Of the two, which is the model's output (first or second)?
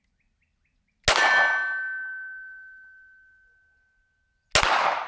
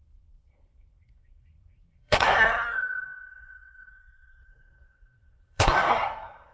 second